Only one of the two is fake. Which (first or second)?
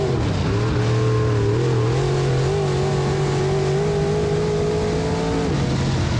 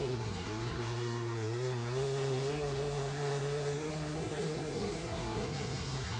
second